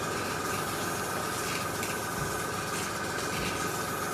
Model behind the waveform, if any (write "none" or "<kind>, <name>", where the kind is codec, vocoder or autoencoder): none